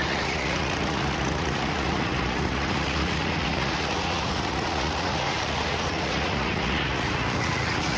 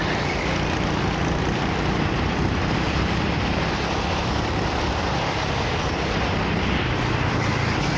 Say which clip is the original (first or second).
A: second